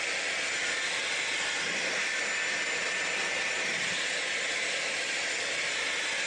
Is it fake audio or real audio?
real